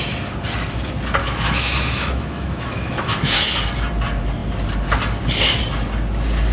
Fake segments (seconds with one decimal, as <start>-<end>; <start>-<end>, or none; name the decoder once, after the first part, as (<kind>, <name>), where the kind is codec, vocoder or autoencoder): 1.2-3.5 (autoencoder, DAC-VAE)